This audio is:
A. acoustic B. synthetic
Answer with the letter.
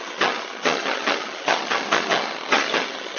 B